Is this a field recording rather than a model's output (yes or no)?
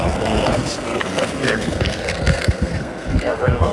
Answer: no